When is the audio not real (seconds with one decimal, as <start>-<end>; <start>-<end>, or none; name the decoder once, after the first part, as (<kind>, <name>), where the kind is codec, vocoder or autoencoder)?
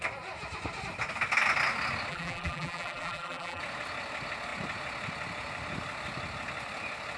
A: 2.1-3.6 (vocoder, BigVGAN v2)